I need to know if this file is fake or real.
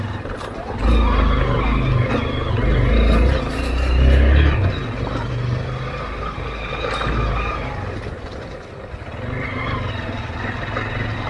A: real